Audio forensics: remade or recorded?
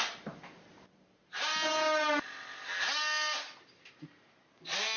recorded